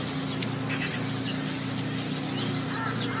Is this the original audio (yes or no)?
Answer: yes